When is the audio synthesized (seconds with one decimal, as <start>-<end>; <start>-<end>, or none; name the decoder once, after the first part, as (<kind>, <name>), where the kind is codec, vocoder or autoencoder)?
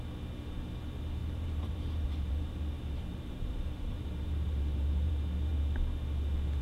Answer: 1.2-5.1 (vocoder, BigVGAN v2)